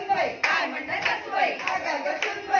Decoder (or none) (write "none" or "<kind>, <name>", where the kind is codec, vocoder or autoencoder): none